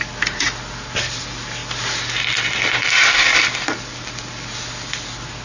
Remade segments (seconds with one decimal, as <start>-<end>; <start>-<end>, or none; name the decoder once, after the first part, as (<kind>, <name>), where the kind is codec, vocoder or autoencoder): 1.6-2.5 (vocoder, BigVGAN v2); 3.3-5.4